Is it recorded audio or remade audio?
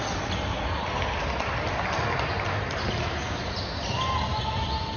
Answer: recorded